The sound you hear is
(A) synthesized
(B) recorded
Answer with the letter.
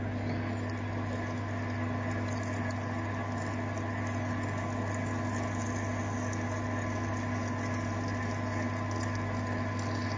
B